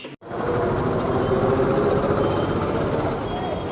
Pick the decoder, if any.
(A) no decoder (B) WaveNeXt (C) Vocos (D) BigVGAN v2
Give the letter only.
A